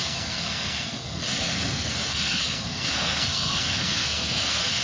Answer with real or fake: fake